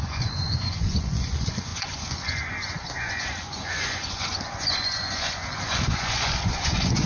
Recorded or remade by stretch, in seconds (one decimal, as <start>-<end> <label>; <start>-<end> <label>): 0.0-7.1 remade